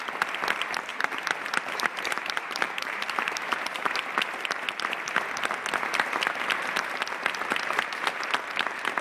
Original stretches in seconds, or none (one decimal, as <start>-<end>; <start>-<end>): 0.0-0.9; 4.0-9.0